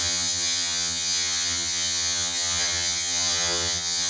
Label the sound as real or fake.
fake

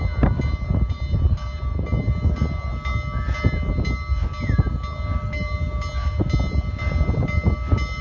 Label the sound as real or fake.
real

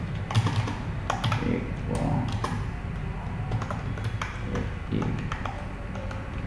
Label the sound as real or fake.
real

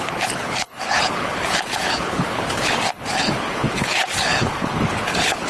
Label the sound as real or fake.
fake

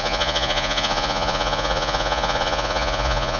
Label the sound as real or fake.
fake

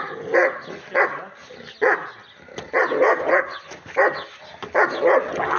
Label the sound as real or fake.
real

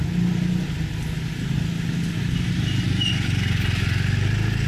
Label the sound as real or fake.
real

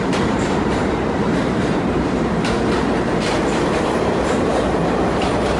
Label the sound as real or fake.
fake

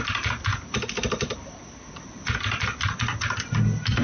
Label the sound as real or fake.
real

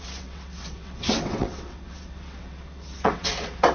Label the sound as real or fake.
fake